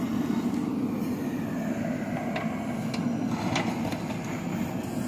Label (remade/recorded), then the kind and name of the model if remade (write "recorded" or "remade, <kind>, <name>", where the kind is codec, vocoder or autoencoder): recorded